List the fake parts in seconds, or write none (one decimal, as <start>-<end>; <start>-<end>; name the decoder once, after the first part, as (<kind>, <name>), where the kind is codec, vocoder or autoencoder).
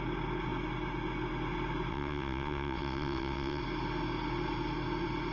1.9-3.6 (vocoder, WaveNeXt)